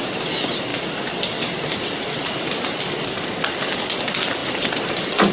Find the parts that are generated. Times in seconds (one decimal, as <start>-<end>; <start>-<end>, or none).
0.7-2.8; 4.4-5.3